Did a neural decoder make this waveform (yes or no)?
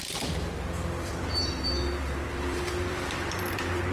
yes